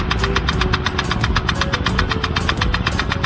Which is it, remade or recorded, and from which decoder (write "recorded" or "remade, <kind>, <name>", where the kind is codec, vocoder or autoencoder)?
recorded